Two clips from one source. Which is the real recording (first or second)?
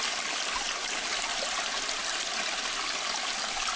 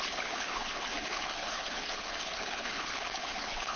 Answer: first